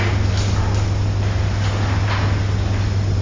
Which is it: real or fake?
real